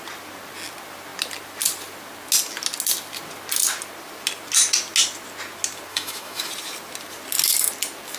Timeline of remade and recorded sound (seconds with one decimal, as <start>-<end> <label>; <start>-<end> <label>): 0.0-5.9 recorded; 5.9-6.5 remade; 6.5-8.2 recorded

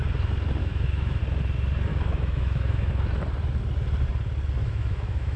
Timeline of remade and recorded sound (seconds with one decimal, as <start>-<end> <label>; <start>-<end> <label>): 0.0-0.6 recorded; 0.6-1.2 remade; 1.2-1.9 recorded; 1.9-2.9 remade; 2.9-4.6 recorded; 4.6-5.4 remade